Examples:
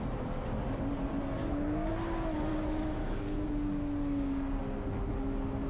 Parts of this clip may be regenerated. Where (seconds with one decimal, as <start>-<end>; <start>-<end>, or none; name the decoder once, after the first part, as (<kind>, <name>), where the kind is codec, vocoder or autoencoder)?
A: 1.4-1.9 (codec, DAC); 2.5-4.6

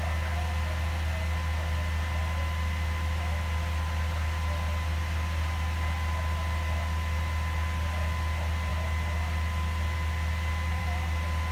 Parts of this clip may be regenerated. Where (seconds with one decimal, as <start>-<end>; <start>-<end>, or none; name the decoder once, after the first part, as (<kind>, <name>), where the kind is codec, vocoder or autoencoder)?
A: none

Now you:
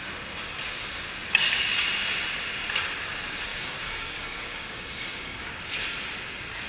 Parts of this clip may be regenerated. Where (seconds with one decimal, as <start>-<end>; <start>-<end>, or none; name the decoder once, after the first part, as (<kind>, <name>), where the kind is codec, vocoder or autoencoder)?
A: 3.5-5.6 (codec, DAC)

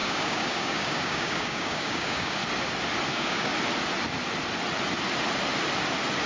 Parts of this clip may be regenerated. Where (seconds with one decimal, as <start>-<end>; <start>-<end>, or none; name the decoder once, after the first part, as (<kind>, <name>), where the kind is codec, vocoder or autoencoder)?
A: 0.0-2.4 (codec, DAC); 3.1-3.5